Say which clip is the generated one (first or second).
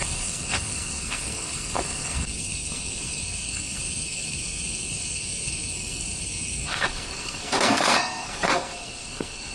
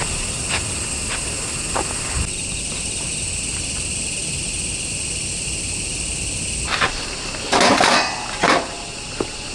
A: first